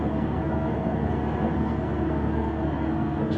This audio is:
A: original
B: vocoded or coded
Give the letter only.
B